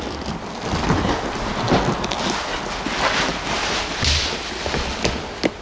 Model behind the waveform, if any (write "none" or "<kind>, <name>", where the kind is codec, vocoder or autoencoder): none